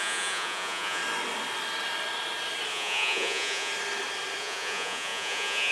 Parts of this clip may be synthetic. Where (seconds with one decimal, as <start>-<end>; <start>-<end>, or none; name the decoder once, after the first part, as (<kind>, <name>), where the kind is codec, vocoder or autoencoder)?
0.0-1.0 (vocoder, Vocos); 2.7-3.7; 4.4-5.7